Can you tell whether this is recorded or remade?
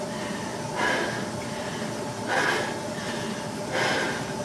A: recorded